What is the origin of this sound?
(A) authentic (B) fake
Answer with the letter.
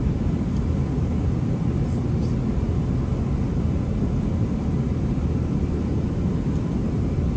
A